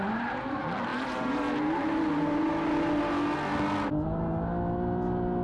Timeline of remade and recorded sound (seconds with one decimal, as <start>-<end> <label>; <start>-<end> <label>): 0.0-5.4 recorded